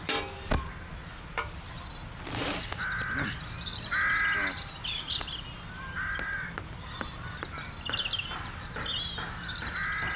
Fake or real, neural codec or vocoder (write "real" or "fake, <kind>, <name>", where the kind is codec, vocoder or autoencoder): real